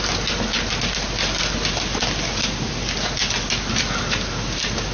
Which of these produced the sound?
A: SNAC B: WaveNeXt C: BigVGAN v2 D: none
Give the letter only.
D